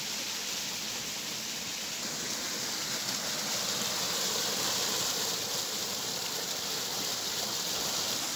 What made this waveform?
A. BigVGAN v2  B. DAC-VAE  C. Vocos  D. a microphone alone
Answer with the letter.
D